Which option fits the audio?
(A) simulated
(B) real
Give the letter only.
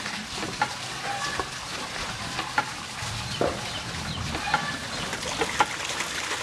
B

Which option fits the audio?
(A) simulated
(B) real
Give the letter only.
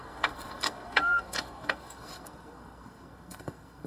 A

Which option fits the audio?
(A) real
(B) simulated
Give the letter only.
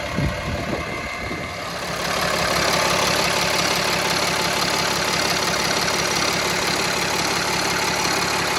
A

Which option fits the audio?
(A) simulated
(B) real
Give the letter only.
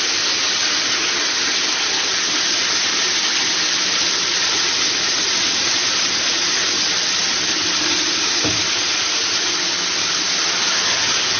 B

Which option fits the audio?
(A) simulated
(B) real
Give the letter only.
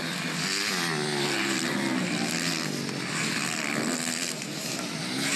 B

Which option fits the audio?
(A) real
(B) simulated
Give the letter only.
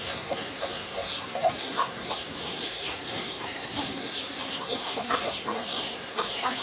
B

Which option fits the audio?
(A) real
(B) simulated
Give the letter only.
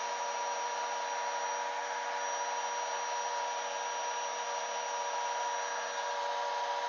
A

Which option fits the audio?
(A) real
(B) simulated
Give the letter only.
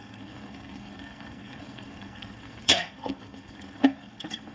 B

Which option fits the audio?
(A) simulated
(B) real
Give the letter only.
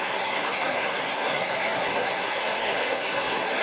A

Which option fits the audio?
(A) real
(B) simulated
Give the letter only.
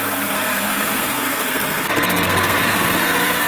B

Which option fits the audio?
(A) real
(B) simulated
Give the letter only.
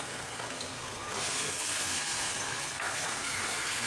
B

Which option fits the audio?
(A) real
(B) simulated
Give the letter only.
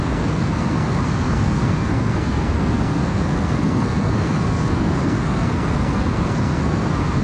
B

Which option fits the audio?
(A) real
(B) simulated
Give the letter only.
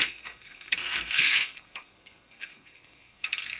B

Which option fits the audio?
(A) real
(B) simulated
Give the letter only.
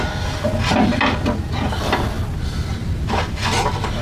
A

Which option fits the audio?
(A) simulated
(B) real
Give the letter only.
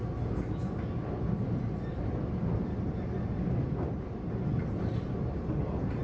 B